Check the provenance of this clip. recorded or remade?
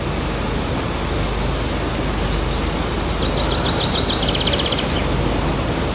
recorded